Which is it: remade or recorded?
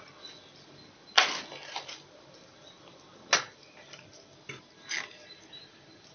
recorded